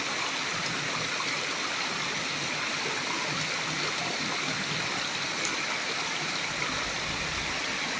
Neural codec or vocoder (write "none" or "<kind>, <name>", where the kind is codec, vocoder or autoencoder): none